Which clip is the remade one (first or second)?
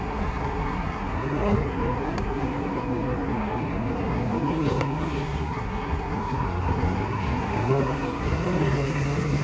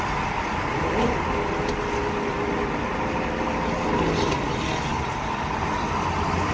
first